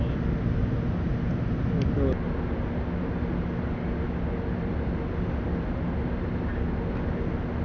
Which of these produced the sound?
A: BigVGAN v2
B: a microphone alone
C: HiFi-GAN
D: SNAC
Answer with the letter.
B